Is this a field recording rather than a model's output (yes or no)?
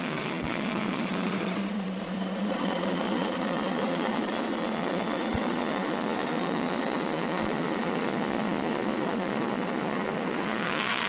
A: no